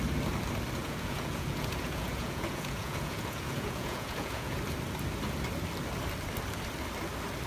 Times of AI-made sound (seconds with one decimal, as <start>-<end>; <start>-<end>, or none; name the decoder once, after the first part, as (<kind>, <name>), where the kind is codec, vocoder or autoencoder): 0.8-4.6 (vocoder, Vocos)